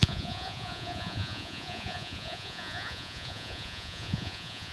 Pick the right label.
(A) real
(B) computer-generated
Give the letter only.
B